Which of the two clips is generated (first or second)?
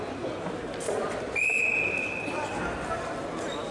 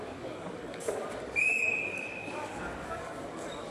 second